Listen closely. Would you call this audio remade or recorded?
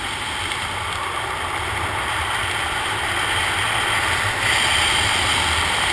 recorded